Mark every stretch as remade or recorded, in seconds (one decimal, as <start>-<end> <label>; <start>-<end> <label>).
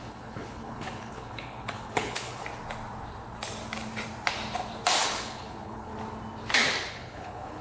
0.0-2.4 remade; 2.4-5.0 recorded; 5.0-5.9 remade; 5.9-6.9 recorded; 6.9-7.6 remade